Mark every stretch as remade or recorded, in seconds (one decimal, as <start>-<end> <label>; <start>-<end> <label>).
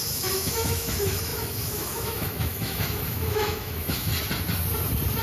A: 0.0-4.1 remade; 4.1-5.2 recorded